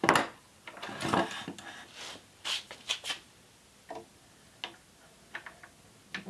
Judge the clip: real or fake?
real